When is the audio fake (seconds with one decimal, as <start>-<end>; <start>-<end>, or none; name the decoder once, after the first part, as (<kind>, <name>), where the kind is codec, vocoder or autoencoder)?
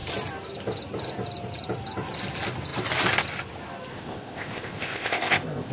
3.9-5.7 (codec, ZipCodec)